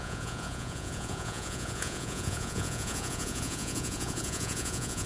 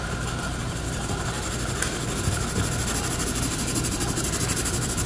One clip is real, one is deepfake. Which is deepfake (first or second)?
first